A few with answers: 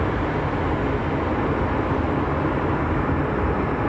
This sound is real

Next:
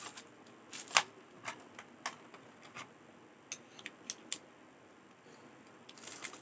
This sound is real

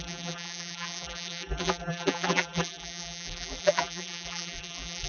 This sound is fake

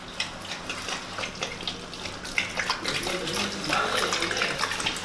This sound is real